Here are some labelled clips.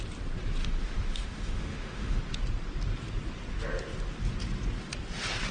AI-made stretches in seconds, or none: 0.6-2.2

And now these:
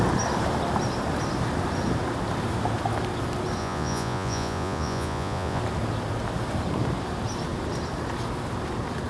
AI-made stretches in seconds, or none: 3.6-5.6

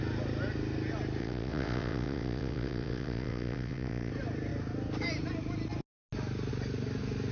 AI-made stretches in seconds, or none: 1.2-4.1

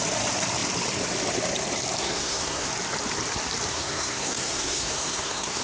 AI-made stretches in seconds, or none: 2.0-2.7; 3.7-5.6

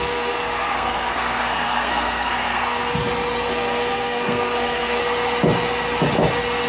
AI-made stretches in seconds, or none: 0.0-2.8; 3.5-5.0